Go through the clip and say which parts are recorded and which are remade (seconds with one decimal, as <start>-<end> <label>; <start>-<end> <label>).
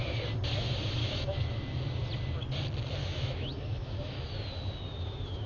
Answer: 0.0-1.0 recorded; 1.0-1.8 remade; 1.8-3.0 recorded; 3.0-4.3 remade; 4.3-5.5 recorded